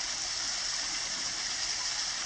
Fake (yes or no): no